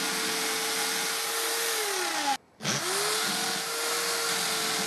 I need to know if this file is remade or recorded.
recorded